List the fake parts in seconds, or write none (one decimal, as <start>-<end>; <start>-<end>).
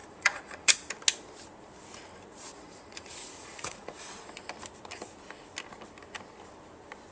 0.0-0.9; 2.6-4.1